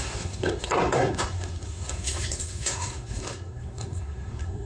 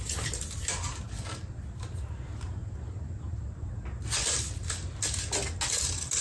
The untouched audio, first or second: second